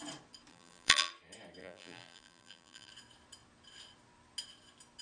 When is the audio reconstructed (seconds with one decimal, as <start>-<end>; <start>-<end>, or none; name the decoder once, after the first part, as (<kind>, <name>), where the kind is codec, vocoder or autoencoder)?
0.5-1.1 (vocoder, BigVGAN v2); 1.6-2.9